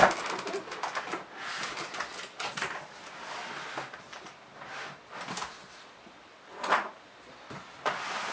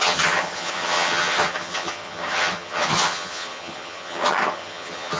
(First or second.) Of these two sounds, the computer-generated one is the second